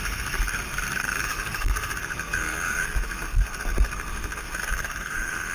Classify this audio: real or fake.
fake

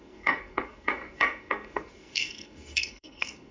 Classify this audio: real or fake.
fake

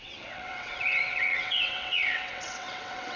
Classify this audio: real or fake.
fake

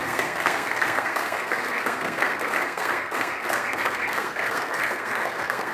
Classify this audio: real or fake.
fake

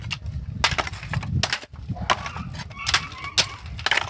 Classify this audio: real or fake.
real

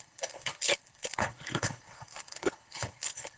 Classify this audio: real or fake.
fake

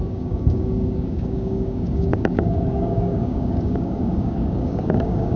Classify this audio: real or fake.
fake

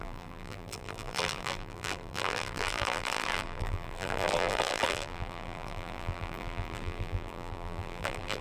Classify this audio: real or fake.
fake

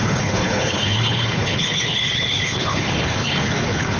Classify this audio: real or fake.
fake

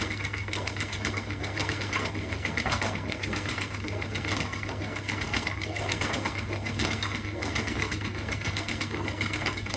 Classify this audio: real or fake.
fake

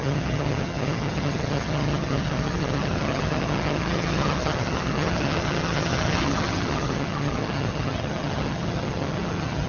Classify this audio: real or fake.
fake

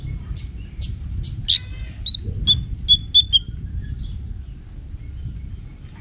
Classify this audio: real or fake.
real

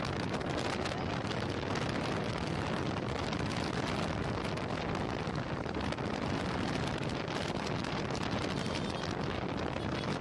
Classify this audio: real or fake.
real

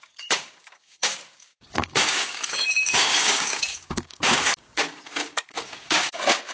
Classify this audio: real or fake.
fake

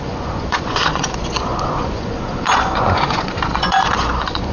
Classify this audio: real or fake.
fake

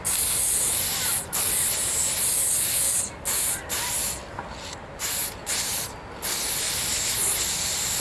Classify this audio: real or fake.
real